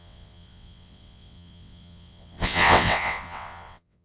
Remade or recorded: remade